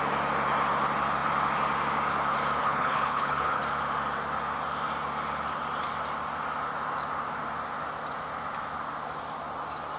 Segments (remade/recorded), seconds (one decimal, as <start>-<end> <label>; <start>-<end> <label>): 0.0-2.6 recorded; 2.6-3.6 remade; 3.6-10.0 recorded